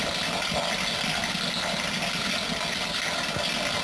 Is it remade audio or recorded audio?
recorded